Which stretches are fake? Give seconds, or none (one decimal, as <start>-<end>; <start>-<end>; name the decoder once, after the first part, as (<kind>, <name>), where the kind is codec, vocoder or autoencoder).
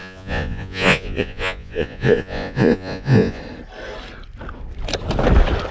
0.0-3.4 (vocoder, Vocos)